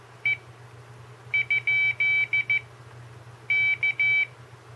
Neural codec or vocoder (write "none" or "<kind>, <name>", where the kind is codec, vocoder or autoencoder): none